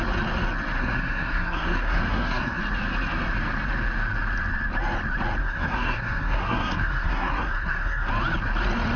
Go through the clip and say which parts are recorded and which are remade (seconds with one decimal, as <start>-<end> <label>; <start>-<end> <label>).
0.0-0.8 recorded; 0.8-2.6 remade; 2.6-5.4 recorded; 5.4-8.1 remade; 8.1-9.0 recorded